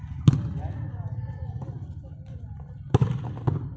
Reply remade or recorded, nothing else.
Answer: recorded